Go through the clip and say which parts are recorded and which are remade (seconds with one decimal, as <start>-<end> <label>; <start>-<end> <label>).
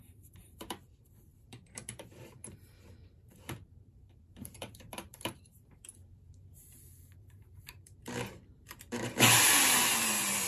0.0-10.5 remade